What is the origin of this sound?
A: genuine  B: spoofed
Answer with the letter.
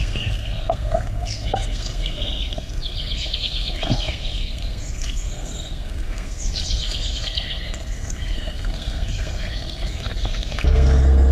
B